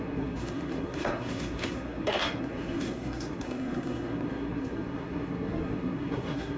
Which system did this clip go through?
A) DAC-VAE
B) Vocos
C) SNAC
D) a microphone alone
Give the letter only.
C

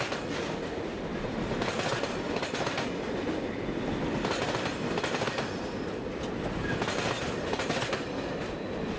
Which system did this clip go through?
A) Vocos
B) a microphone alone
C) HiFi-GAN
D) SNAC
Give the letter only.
B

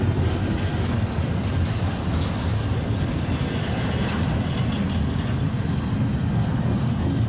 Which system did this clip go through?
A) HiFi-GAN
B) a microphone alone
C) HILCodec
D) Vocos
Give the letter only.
B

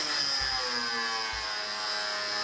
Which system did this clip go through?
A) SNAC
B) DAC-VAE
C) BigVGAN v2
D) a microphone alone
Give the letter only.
D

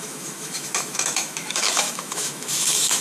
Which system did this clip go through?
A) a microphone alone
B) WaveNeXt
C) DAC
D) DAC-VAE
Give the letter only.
D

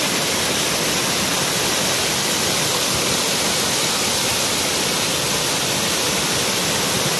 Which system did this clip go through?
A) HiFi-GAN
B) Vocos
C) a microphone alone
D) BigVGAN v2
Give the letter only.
C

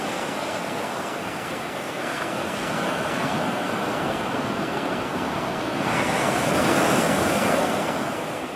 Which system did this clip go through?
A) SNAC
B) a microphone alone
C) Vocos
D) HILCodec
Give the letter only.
A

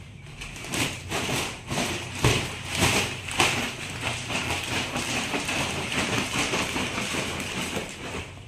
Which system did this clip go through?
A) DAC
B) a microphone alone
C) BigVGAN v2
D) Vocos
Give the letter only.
C